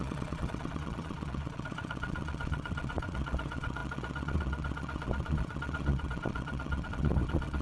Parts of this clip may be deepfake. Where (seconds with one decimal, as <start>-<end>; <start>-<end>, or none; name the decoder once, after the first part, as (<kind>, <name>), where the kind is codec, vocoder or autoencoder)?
0.0-7.6 (vocoder, Vocos)